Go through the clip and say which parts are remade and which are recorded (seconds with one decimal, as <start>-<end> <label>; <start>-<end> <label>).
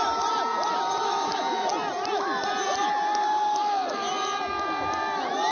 0.0-5.5 recorded